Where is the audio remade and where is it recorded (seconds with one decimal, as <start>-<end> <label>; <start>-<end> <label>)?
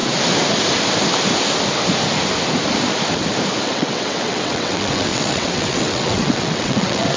0.0-3.6 recorded; 3.6-7.2 remade